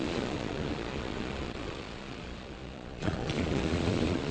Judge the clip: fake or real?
fake